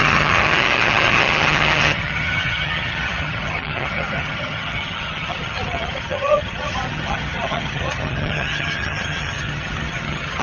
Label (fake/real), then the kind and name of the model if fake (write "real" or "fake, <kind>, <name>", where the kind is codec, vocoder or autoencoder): fake, vocoder, HiFi-GAN